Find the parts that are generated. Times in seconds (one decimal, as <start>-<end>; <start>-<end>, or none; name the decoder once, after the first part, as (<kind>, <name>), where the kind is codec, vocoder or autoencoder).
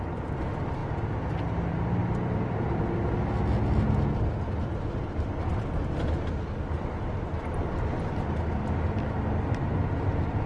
none